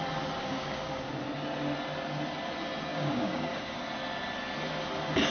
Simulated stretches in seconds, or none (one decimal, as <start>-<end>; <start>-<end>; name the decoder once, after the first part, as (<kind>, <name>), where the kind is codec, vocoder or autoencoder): 0.4-1.1 (codec, DAC); 2.9-3.8